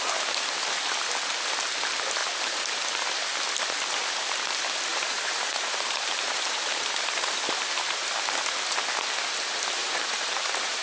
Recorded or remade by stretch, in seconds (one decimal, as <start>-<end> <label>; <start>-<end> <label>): 0.0-2.2 recorded; 2.2-2.8 remade; 2.8-4.9 recorded; 4.9-7.3 remade; 7.3-9.8 recorded; 9.8-10.8 remade